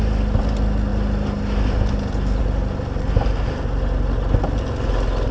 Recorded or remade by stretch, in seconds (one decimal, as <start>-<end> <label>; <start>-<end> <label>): 0.0-5.3 recorded